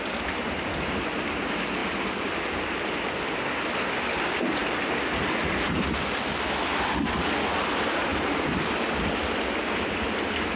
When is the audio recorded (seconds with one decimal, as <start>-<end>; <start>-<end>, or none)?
0.0-4.6; 5.3-8.1; 8.7-10.6